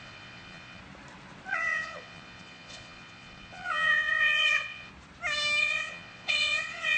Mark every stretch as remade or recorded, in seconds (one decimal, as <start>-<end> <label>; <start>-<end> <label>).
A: 0.0-0.8 remade; 0.8-1.5 recorded; 1.5-4.9 remade; 4.9-5.6 recorded; 5.6-7.0 remade